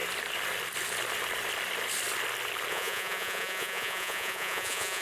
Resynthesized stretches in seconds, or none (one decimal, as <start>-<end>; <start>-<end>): 2.7-5.0